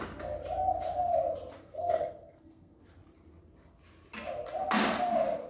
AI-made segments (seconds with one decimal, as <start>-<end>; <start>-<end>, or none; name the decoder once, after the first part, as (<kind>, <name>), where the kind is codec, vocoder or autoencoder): 1.6-2.8 (codec, SNAC)